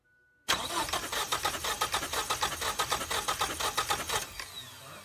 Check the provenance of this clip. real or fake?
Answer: real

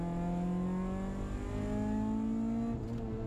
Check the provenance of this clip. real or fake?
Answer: real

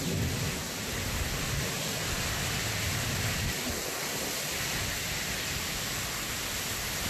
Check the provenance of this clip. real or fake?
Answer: real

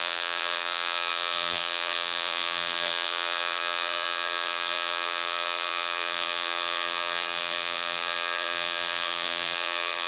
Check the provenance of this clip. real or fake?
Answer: fake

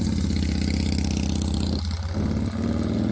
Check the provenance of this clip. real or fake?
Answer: real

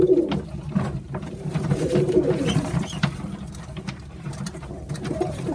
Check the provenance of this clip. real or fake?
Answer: fake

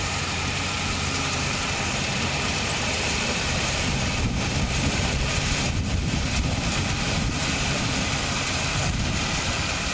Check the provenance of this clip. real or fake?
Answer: fake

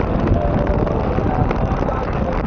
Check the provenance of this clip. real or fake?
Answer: real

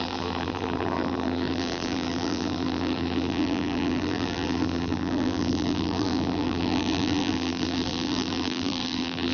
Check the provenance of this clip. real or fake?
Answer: fake